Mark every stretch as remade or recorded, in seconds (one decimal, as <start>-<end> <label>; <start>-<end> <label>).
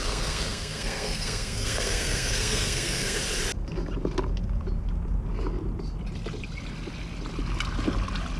0.0-3.2 remade; 3.2-8.4 recorded